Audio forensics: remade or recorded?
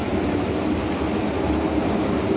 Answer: recorded